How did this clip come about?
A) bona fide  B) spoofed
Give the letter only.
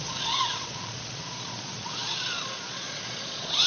B